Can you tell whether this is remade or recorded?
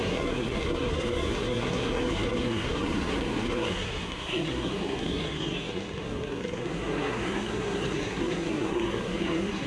remade